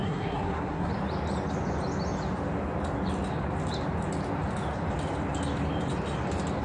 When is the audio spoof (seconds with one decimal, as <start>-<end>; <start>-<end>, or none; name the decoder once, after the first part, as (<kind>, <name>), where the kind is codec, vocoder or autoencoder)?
0.0-0.9 (codec, SNAC)